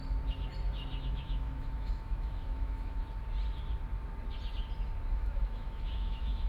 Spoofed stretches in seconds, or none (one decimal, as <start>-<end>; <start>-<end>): 1.0-3.0; 5.1-6.5